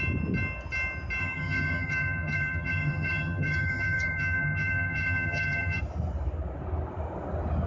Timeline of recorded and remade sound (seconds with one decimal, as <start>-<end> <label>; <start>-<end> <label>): 0.0-1.2 recorded; 1.2-5.8 remade; 5.8-7.7 recorded